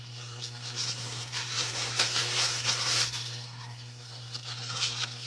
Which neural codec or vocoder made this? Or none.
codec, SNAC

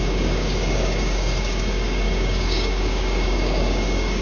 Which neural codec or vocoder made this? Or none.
codec, DAC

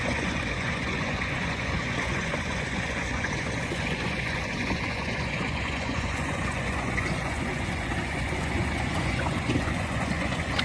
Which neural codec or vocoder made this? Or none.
vocoder, Vocos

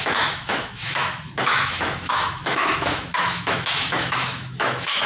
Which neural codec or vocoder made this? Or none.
autoencoder, DAC-VAE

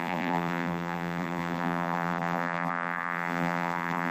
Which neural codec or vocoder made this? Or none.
vocoder, BigVGAN v2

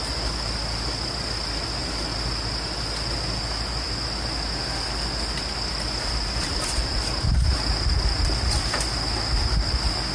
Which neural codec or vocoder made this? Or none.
none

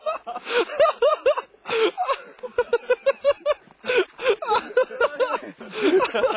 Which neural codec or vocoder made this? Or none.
none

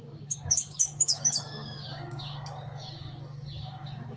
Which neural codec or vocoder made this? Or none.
codec, DAC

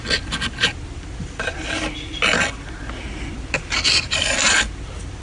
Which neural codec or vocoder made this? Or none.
none